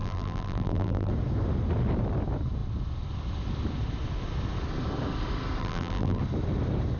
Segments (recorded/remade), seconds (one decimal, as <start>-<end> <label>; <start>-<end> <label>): 0.0-1.1 remade; 1.1-5.6 recorded; 5.6-6.2 remade; 6.2-7.0 recorded